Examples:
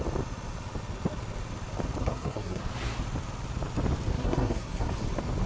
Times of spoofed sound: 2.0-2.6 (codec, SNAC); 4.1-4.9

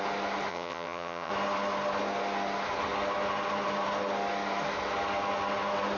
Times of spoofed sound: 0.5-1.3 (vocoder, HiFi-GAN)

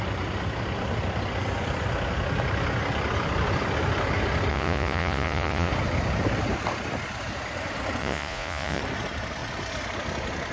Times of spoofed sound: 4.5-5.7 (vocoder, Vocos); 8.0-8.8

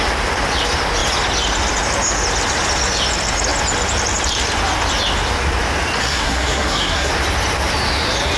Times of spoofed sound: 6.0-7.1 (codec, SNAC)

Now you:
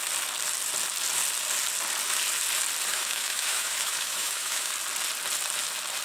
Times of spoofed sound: 2.9-4.7 (autoencoder, DAC-VAE)

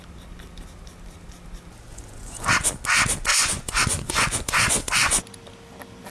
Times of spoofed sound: 1.9-2.5 (vocoder, Vocos); 3.3-5.2